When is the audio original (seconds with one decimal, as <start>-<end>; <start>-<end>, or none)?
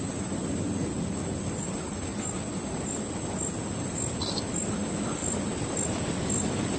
0.0-6.8